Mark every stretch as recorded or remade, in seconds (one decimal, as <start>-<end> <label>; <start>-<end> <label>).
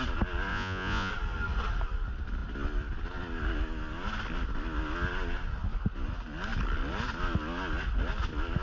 0.0-0.5 recorded; 0.5-1.1 remade; 1.1-8.6 recorded